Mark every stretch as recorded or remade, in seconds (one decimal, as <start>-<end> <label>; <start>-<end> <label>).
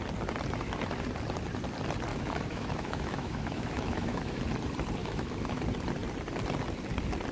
0.0-2.1 recorded; 2.1-4.4 remade; 4.4-5.0 recorded; 5.0-5.6 remade; 5.6-7.3 recorded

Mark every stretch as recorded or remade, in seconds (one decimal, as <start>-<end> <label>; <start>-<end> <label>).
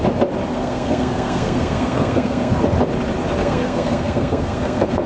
0.0-0.5 recorded; 0.5-2.5 remade; 2.5-3.4 recorded; 3.4-5.1 remade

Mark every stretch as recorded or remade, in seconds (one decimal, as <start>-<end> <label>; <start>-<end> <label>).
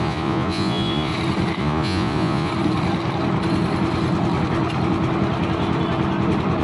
0.0-1.1 remade; 1.1-1.6 recorded; 1.6-2.5 remade; 2.5-6.6 recorded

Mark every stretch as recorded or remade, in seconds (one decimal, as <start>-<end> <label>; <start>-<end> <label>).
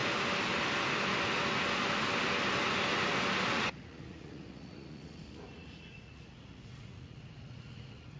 0.0-3.5 recorded; 3.5-8.2 remade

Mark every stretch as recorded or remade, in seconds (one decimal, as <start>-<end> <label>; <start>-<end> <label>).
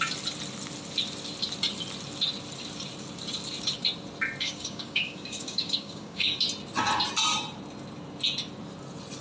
0.0-4.4 recorded; 4.4-6.4 remade; 6.4-9.2 recorded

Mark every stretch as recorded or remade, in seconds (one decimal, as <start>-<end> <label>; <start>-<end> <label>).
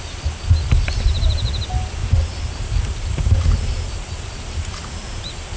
0.0-2.0 recorded; 2.0-5.6 remade